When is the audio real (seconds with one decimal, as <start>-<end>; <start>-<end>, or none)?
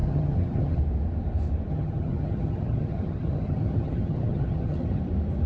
0.8-1.7; 5.0-5.5